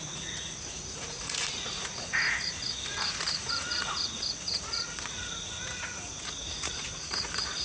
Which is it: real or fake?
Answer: fake